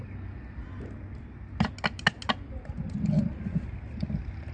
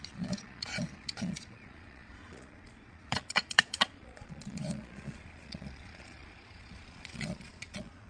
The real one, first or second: first